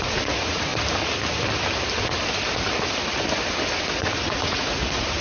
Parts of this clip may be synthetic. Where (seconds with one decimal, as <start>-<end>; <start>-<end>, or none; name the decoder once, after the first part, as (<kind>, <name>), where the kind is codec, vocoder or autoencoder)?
0.0-0.7 (vocoder, Vocos); 3.8-5.2